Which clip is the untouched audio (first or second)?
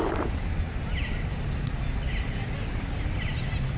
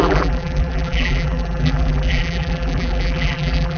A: first